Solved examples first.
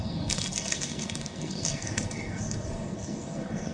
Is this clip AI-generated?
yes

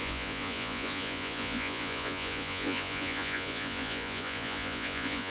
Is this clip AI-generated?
yes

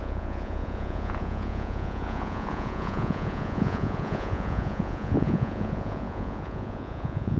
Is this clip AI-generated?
yes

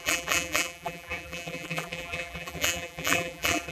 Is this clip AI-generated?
yes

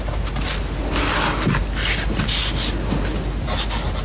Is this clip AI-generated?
no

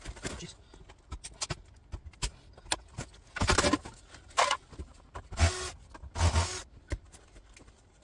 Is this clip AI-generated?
no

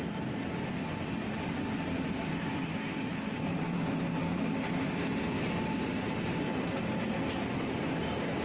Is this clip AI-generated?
no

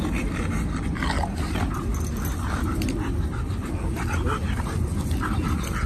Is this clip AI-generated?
no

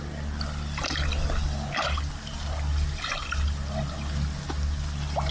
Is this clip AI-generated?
no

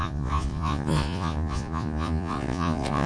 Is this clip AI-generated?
yes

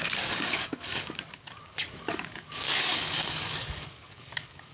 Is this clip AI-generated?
yes